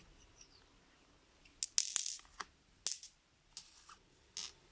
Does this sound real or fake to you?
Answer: real